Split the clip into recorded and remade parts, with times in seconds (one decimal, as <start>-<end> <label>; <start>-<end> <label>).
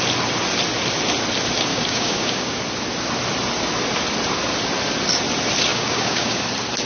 0.0-1.7 recorded; 1.7-2.6 remade; 2.6-5.7 recorded; 5.7-6.4 remade; 6.4-6.9 recorded